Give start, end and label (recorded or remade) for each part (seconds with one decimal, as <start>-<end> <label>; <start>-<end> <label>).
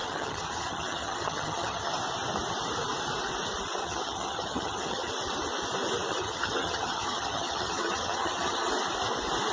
0.0-1.9 remade; 1.9-3.8 recorded; 3.8-5.1 remade; 5.1-6.1 recorded; 6.1-8.7 remade; 8.7-9.5 recorded